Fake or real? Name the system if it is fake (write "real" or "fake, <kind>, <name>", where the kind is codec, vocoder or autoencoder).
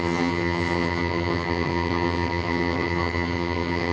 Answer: fake, vocoder, HiFi-GAN